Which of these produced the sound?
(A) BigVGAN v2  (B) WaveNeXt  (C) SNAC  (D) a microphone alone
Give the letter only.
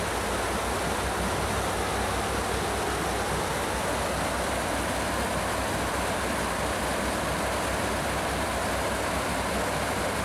D